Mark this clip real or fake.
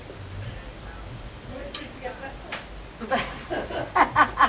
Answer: real